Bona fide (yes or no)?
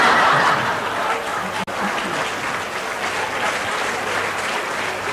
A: yes